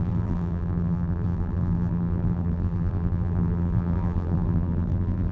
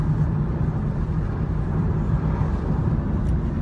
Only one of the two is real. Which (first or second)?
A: second